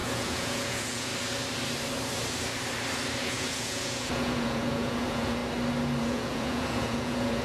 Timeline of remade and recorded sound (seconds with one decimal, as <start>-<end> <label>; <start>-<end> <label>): 0.0-1.1 remade; 1.1-3.2 recorded; 3.2-5.4 remade; 5.4-6.0 recorded; 6.0-7.4 remade